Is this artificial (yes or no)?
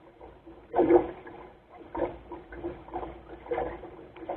no